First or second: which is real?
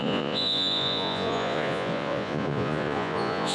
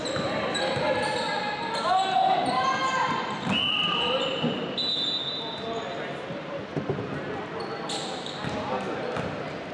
second